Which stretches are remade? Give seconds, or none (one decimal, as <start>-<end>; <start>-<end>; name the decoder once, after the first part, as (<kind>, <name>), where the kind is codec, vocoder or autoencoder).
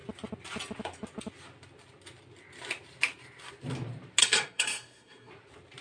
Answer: 4.2-5.3 (codec, SNAC)